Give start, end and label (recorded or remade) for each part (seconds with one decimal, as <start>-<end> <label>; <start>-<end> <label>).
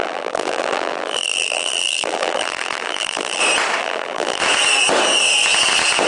0.0-3.4 remade; 3.4-3.8 recorded; 3.8-4.4 remade; 4.4-6.1 recorded